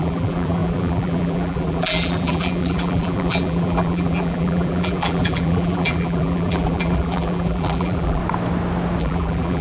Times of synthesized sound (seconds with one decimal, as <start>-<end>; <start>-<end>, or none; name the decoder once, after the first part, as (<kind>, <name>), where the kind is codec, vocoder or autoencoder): 0.0-8.2 (vocoder, BigVGAN v2); 9.0-9.6